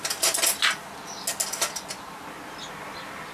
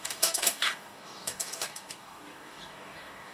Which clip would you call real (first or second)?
first